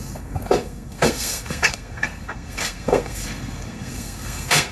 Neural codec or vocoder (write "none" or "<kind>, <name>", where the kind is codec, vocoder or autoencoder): codec, SNAC